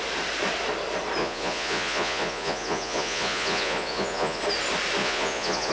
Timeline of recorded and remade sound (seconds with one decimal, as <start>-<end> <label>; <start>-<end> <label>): 0.0-1.2 recorded; 1.2-4.4 remade; 4.4-5.0 recorded; 5.0-5.7 remade